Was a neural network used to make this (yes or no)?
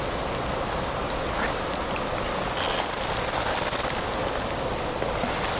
no